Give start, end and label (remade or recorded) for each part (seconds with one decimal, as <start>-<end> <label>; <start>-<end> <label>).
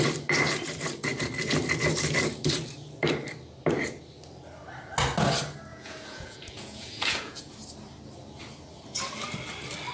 0.0-5.7 recorded; 5.7-7.5 remade; 7.5-9.9 recorded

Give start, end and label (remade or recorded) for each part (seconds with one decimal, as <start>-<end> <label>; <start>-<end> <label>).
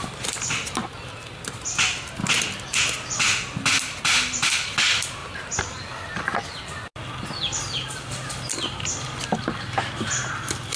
0.0-10.8 recorded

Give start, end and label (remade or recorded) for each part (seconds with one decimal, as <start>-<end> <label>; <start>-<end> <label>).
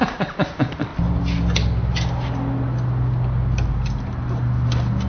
0.0-5.1 recorded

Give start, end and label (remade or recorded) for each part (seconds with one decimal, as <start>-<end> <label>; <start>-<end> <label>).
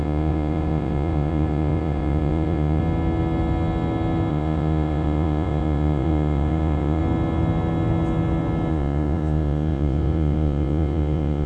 0.0-2.8 remade; 2.8-4.3 recorded; 4.3-7.0 remade; 7.0-8.7 recorded; 8.7-11.5 remade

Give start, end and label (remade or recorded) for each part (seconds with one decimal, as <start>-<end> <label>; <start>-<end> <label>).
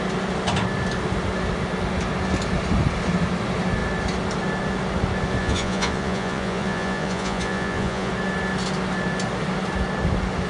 0.0-5.4 recorded; 5.4-8.1 remade; 8.1-10.5 recorded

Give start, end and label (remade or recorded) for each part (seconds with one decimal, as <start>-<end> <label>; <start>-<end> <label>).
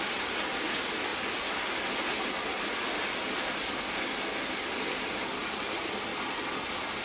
0.0-7.0 recorded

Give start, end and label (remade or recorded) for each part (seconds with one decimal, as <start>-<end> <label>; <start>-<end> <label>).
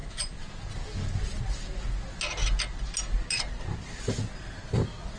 0.0-0.7 remade; 0.7-5.2 recorded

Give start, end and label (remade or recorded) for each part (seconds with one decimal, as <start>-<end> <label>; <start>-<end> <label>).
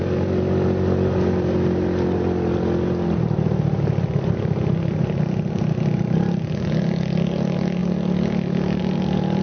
0.0-9.4 recorded